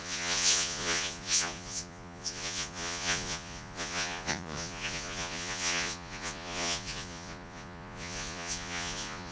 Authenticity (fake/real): fake